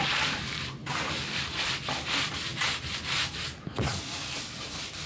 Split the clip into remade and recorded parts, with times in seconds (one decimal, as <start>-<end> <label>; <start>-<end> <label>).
0.0-0.8 recorded; 0.8-1.6 remade; 1.6-5.1 recorded